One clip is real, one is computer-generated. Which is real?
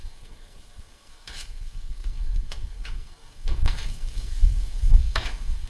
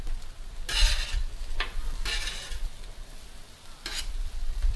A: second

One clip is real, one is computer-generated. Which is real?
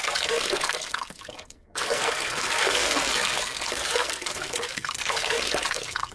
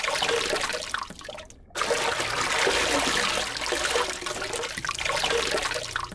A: second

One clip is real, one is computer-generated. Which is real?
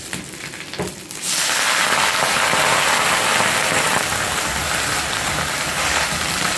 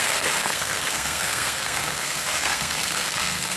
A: first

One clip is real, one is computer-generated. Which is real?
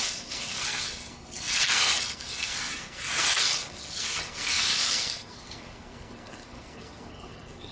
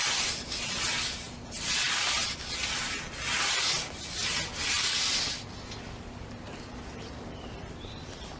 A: second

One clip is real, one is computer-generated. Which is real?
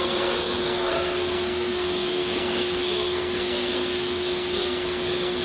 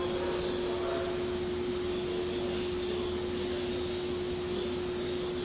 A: second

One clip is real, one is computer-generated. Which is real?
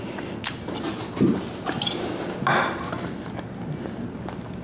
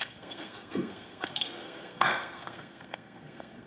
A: first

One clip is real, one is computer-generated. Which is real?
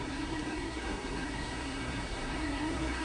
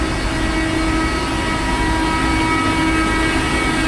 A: second